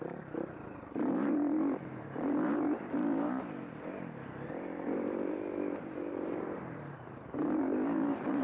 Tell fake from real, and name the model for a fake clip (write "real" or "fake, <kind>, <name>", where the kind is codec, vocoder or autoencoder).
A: fake, vocoder, BigVGAN v2